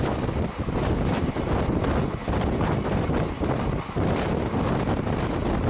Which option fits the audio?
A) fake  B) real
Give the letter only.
B